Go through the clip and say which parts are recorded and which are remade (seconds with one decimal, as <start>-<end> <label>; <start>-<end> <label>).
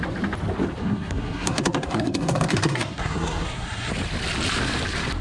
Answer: 0.0-0.8 recorded; 0.8-3.9 remade; 3.9-5.2 recorded